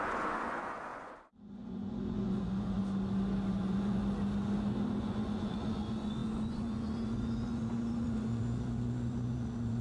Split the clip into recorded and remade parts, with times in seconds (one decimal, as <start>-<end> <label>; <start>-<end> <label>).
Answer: 0.0-2.8 remade; 2.8-3.5 recorded; 3.5-4.0 remade; 4.0-5.0 recorded; 5.0-9.8 remade